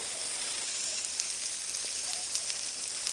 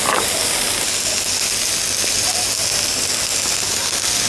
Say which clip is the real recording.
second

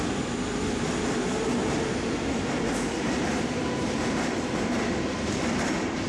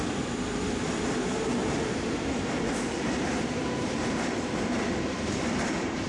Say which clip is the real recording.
first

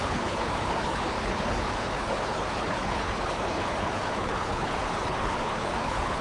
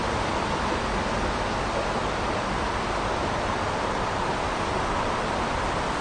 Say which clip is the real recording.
second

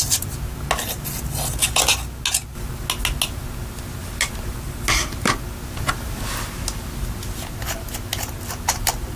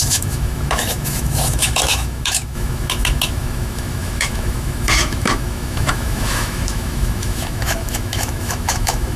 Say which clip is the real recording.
first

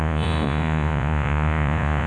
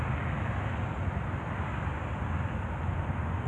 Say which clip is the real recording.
second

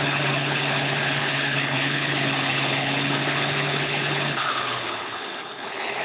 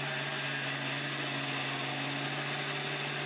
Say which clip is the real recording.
second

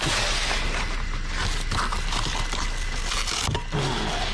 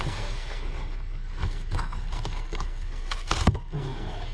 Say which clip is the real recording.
first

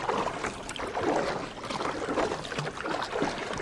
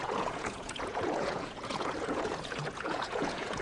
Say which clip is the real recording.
first